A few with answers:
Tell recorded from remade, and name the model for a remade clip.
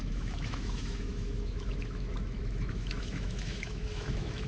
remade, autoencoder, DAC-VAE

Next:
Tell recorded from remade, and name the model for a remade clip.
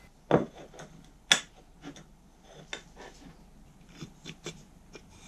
recorded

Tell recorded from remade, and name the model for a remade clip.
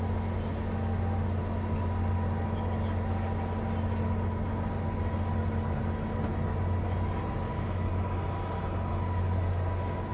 recorded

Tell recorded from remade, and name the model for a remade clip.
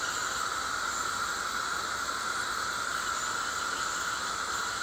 recorded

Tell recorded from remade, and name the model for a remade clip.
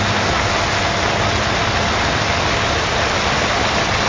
recorded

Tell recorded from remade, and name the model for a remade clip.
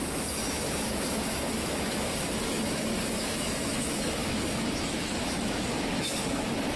remade, autoencoder, DAC-VAE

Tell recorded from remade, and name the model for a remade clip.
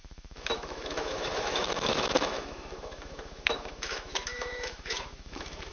remade, autoencoder, DAC-VAE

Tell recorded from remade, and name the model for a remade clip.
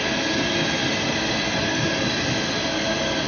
recorded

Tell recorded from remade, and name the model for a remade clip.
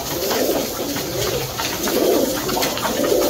recorded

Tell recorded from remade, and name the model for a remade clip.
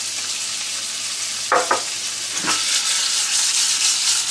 recorded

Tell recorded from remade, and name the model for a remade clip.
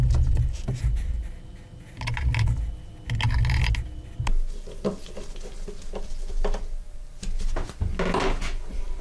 recorded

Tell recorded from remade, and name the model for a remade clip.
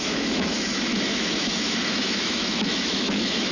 remade, autoencoder, DAC-VAE